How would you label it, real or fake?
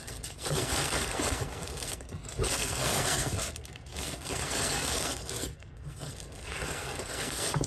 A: fake